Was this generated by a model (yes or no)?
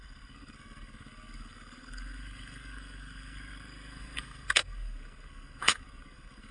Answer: yes